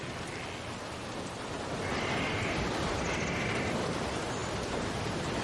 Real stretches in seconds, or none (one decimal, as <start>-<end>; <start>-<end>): 0.0-5.4